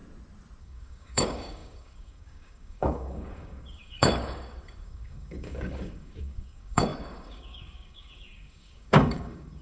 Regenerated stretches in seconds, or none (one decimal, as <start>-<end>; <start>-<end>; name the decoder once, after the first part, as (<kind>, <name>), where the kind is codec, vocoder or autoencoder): 0.6-9.6 (codec, DAC)